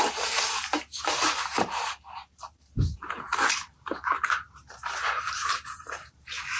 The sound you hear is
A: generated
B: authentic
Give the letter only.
A